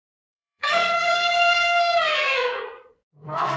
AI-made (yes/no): yes